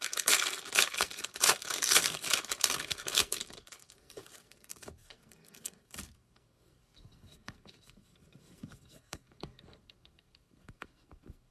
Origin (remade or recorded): remade